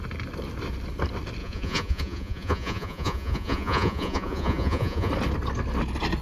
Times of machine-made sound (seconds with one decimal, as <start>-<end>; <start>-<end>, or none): 1.4-5.1